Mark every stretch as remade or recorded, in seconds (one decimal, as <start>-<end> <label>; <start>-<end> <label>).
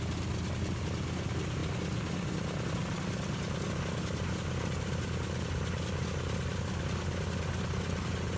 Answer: 0.0-8.4 recorded